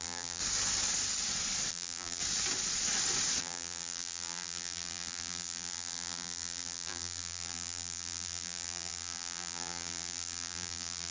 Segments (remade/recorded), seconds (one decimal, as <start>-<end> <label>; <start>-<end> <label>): 0.0-0.4 remade; 0.4-1.7 recorded; 1.7-2.2 remade; 2.2-3.4 recorded; 3.4-11.1 remade